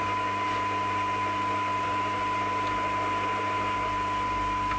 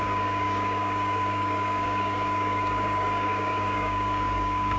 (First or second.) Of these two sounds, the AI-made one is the second